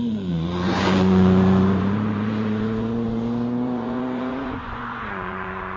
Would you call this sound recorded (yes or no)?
no